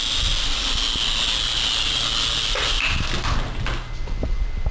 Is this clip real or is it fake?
real